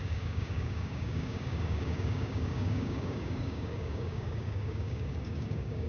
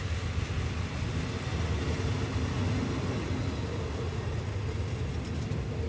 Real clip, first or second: second